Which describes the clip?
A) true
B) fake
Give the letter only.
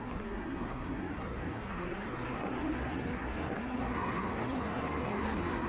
B